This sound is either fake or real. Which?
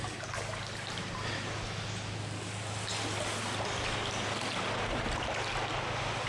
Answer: real